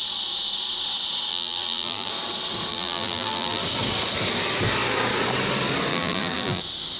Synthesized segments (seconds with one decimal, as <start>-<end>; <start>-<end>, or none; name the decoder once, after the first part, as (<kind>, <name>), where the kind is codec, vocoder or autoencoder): 1.3-2.1 (vocoder, BigVGAN v2); 2.7-3.6; 5.9-6.6